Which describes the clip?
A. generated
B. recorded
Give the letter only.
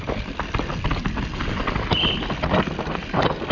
B